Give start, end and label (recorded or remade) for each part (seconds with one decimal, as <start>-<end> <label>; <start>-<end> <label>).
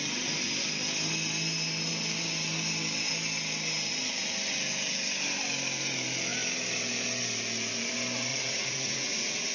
0.0-8.3 recorded; 8.3-9.5 remade